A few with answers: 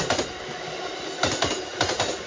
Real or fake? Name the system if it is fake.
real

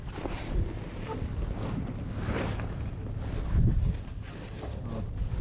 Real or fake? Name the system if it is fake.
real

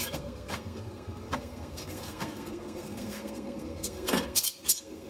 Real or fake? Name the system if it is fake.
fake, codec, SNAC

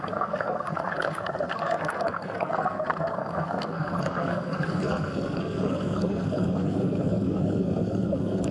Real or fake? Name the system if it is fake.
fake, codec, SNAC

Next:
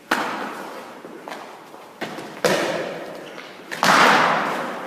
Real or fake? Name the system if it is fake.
real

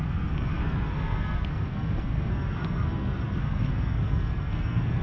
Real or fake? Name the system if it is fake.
fake, codec, SNAC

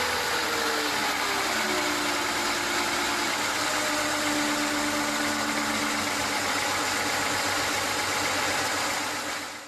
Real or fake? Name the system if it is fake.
real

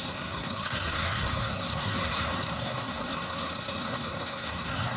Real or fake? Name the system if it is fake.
fake, codec, SNAC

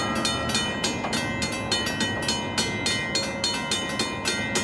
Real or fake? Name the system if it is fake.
real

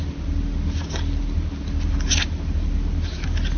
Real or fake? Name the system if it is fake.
real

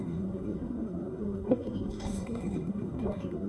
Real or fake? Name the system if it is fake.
fake, codec, SNAC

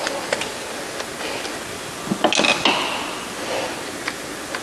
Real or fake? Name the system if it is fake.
real